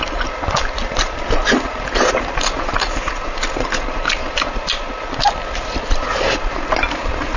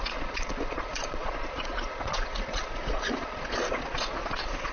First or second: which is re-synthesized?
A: second